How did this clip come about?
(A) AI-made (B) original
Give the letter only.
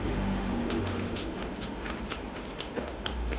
A